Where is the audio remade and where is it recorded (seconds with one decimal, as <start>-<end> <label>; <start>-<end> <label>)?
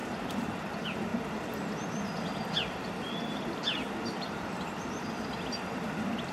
0.0-0.6 remade; 0.6-6.3 recorded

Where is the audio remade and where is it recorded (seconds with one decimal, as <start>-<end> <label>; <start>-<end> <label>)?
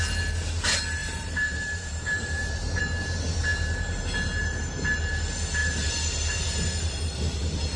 0.0-1.0 recorded; 1.0-2.8 remade; 2.8-4.4 recorded; 4.4-5.0 remade; 5.0-5.6 recorded; 5.6-7.8 remade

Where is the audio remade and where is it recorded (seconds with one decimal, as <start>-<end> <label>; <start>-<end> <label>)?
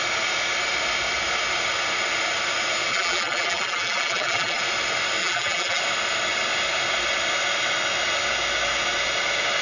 0.0-2.9 recorded; 2.9-4.6 remade; 4.6-5.2 recorded; 5.2-5.8 remade; 5.8-9.6 recorded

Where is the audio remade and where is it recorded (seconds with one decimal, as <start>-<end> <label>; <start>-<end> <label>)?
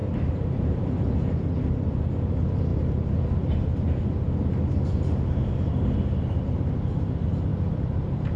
0.0-1.1 remade; 1.1-7.5 recorded; 7.5-8.4 remade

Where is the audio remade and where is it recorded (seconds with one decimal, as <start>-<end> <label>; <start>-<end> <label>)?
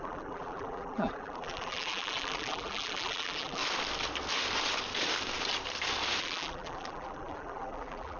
0.0-3.6 remade; 3.6-6.2 recorded; 6.2-8.2 remade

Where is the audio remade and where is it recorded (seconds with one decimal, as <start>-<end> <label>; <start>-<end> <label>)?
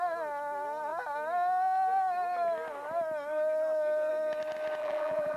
0.0-4.8 recorded; 4.8-5.4 remade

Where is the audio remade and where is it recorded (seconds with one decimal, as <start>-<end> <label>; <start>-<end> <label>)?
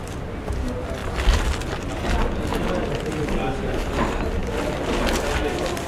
0.0-1.0 recorded; 1.0-1.8 remade; 1.8-2.5 recorded; 2.5-3.1 remade; 3.1-5.9 recorded